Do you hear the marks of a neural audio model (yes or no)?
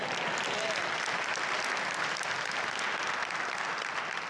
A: no